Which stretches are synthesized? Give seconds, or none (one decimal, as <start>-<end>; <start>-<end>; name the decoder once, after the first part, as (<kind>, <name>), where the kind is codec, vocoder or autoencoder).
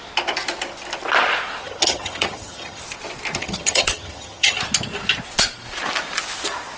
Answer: 1.6-2.8 (vocoder, HiFi-GAN); 3.4-4.6